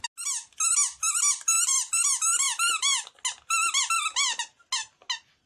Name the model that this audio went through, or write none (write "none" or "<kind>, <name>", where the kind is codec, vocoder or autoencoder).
none